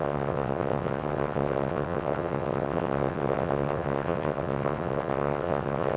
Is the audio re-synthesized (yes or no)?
yes